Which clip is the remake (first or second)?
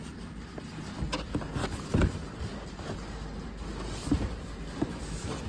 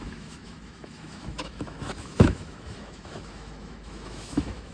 second